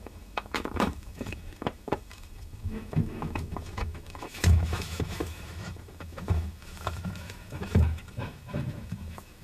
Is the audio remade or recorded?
remade